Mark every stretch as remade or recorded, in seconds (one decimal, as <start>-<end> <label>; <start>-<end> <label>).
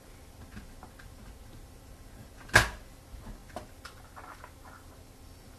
0.0-5.6 recorded